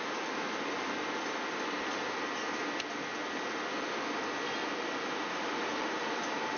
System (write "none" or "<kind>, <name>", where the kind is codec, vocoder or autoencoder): none